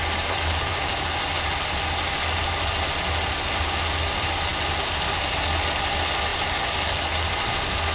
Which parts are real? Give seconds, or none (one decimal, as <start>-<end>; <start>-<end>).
0.0-7.9